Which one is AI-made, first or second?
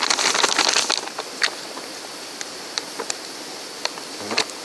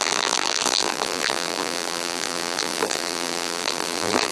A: second